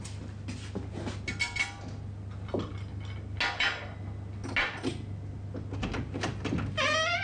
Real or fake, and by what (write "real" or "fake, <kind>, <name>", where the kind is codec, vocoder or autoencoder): real